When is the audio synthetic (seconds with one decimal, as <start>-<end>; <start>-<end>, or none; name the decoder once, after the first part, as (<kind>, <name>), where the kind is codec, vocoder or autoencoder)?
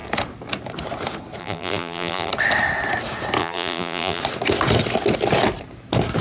1.4-2.3 (vocoder, BigVGAN v2); 3.4-4.2